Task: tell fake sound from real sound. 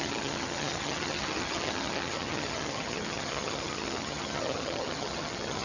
fake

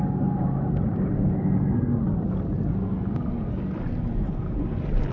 real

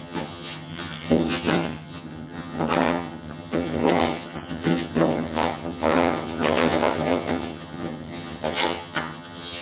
fake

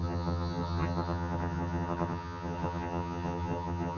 fake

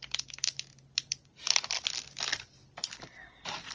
real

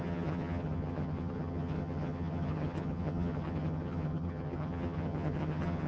fake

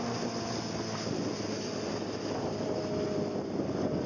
real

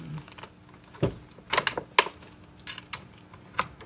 real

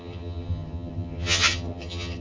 fake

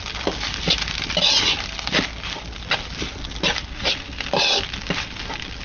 real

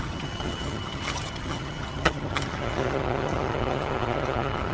fake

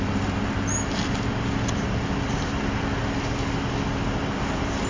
real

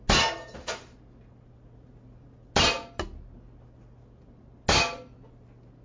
real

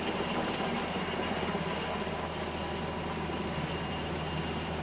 real